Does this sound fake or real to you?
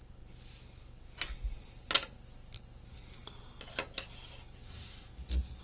real